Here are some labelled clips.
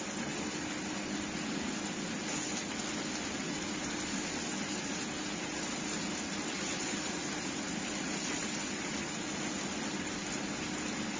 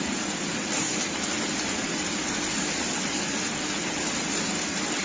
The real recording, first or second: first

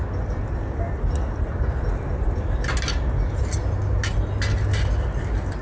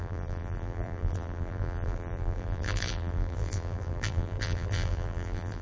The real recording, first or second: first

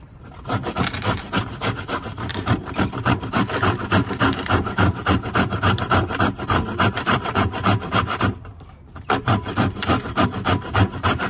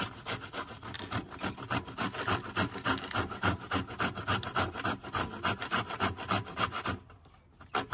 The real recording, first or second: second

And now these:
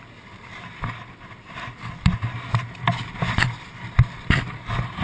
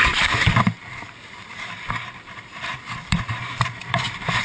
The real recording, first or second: first